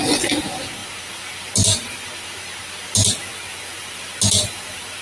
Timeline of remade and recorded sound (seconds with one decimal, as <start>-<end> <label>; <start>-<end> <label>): 0.0-5.0 recorded